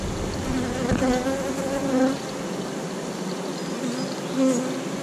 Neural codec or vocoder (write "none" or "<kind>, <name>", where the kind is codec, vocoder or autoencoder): none